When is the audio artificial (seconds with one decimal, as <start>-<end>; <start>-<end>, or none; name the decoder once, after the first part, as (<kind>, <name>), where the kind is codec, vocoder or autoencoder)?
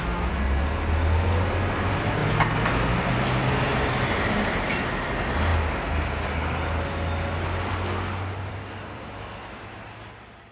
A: none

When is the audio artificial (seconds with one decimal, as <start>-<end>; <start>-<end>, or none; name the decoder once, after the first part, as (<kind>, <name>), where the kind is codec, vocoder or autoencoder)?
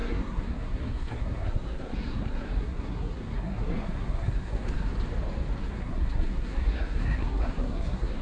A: 0.0-4.9 (codec, SNAC); 5.6-8.2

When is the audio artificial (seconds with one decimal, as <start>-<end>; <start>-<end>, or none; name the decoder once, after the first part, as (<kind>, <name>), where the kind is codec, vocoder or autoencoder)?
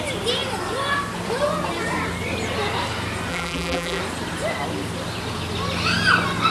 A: 3.3-4.0 (vocoder, BigVGAN v2)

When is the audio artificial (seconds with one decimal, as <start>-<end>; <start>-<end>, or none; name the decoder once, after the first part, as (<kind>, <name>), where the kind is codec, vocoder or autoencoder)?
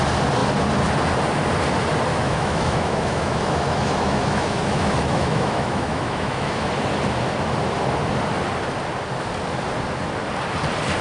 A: 2.1-6.7 (autoencoder, DAC-VAE)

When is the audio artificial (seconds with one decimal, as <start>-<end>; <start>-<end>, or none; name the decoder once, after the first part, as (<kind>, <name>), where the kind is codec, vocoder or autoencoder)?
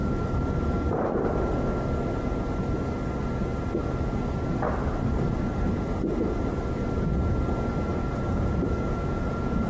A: 7.9-9.7 (vocoder, Vocos)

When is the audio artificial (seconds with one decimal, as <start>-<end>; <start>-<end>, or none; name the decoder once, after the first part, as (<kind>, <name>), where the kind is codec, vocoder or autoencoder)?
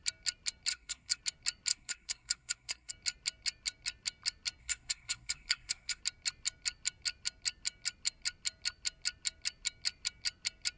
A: 0.7-1.2 (codec, SNAC); 1.7-2.9; 4.6-6.0